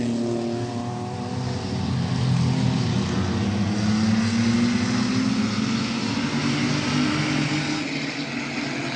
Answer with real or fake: real